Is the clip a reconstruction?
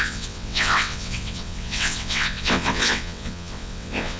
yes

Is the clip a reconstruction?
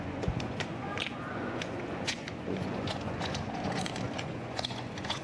yes